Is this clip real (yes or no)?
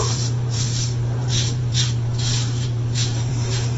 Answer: no